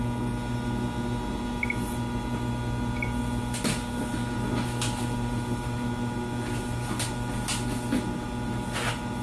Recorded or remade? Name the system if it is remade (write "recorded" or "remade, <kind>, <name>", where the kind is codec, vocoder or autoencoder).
recorded